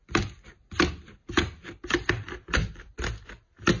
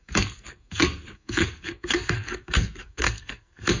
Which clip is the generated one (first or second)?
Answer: second